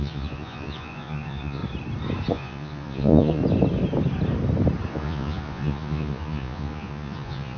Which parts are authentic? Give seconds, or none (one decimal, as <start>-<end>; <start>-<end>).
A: 1.6-2.3; 3.4-4.9